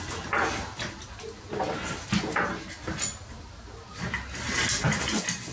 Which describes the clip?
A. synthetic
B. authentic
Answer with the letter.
B